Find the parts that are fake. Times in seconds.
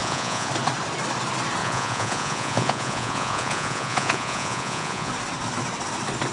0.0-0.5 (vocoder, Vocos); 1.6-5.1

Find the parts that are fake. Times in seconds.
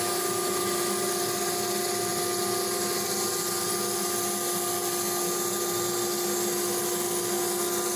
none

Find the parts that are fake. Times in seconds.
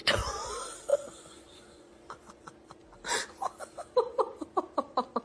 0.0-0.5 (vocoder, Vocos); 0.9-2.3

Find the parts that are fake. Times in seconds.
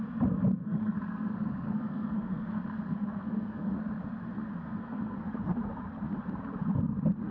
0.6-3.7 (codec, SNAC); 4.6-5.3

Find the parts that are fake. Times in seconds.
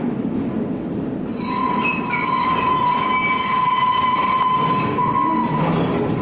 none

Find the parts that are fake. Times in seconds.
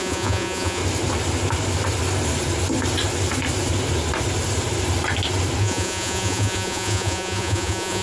0.0-0.8 (vocoder, Vocos); 5.6-8.0